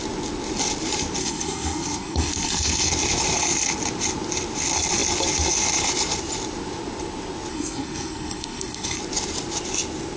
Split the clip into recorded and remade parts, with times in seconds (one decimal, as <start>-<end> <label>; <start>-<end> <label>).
0.0-1.2 recorded; 1.2-2.9 remade; 2.9-7.5 recorded; 7.5-9.0 remade; 9.0-10.2 recorded